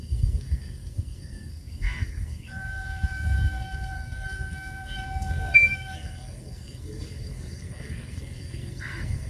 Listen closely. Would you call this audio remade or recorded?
remade